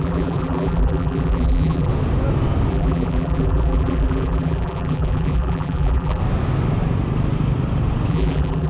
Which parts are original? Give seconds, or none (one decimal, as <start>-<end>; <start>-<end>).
1.9-2.7; 6.2-8.1